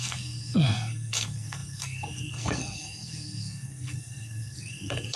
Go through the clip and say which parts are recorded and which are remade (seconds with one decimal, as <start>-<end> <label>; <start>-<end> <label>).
0.0-5.2 remade